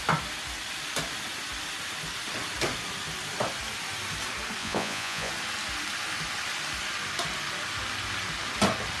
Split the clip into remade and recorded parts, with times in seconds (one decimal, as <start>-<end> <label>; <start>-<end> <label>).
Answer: 0.0-4.6 recorded; 4.6-5.3 remade; 5.3-9.0 recorded